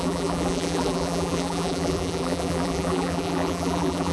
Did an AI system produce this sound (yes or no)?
yes